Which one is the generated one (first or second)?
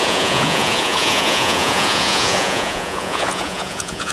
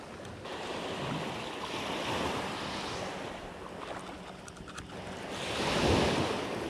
first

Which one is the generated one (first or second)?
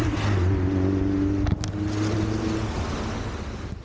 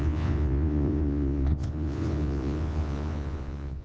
second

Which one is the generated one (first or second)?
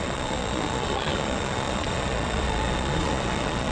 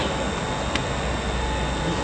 first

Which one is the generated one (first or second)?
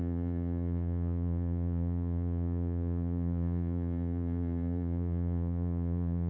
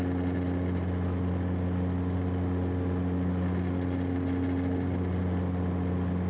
first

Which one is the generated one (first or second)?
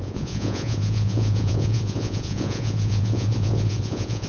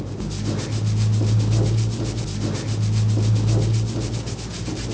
first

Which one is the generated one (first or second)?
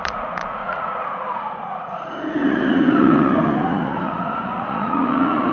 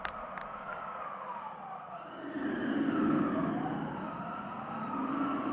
first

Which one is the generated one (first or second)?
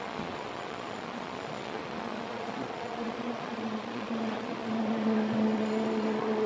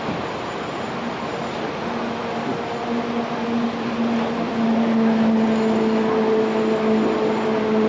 first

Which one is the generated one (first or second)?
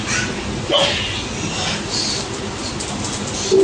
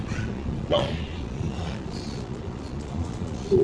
second